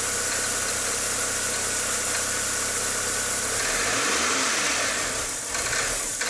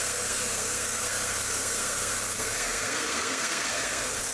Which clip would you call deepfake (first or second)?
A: second